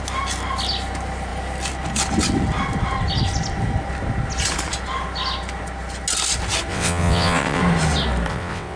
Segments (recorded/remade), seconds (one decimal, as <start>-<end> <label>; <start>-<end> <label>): 0.0-6.7 recorded; 6.7-7.6 remade; 7.6-8.3 recorded; 8.3-8.8 remade